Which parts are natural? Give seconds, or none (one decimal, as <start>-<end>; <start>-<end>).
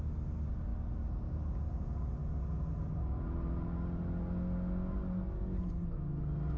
0.0-6.6